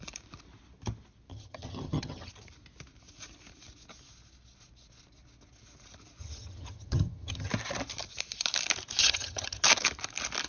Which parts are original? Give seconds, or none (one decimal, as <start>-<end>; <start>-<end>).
0.0-1.3; 2.3-6.2; 7.5-9.0; 9.6-10.5